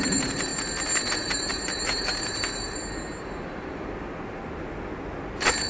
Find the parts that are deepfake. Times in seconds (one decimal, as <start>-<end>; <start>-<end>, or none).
0.0-0.5; 1.1-2.8